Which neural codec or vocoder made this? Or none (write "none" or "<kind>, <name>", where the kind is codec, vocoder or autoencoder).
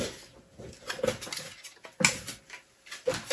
none